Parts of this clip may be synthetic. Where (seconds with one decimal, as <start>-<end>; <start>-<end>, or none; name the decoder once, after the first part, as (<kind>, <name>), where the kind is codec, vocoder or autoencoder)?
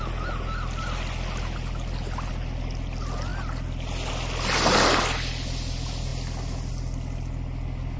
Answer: none